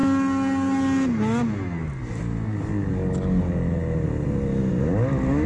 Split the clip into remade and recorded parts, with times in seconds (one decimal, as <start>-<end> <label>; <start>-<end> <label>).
0.0-5.5 recorded